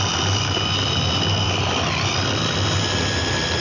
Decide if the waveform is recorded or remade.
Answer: recorded